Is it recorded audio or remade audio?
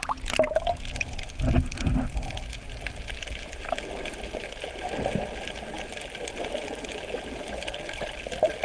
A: recorded